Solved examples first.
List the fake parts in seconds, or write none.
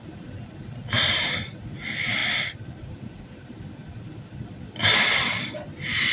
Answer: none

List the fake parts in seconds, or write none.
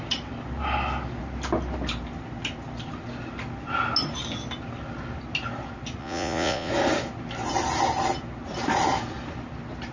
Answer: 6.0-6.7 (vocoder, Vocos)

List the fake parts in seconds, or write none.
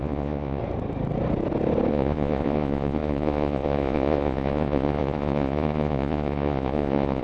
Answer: 0.0-0.6 (vocoder, Vocos); 1.9-7.2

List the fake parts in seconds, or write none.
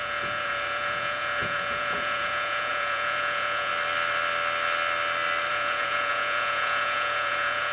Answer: 0.0-3.7 (vocoder, Vocos); 5.5-7.7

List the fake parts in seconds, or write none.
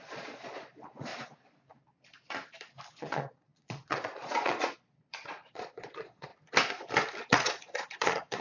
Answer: 0.0-1.1 (vocoder, Vocos); 2.9-6.3; 7.3-8.4